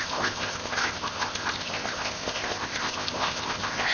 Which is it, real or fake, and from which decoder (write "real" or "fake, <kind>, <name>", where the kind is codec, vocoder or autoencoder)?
fake, codec, ZipCodec